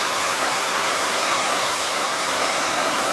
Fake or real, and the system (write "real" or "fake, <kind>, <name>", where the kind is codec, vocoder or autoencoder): fake, codec, SNAC